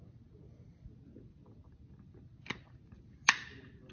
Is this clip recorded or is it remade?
recorded